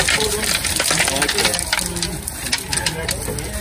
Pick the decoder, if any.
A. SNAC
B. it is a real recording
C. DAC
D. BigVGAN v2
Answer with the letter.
B